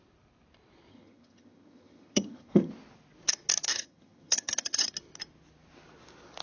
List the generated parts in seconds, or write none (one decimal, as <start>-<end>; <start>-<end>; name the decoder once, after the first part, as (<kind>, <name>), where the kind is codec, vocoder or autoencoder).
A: 0.9-2.7 (vocoder, HiFi-GAN); 3.7-4.9